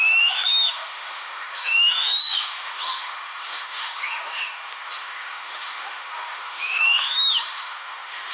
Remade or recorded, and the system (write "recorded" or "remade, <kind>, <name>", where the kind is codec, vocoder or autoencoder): remade, autoencoder, DAC-VAE